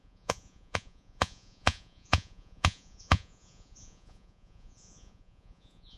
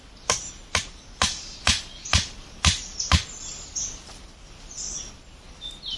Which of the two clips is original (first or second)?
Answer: second